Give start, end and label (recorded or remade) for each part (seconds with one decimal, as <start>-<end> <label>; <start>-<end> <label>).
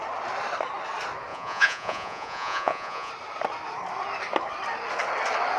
0.0-1.3 recorded; 1.3-3.1 remade; 3.1-5.6 recorded